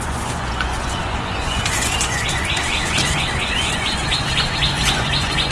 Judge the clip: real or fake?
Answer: fake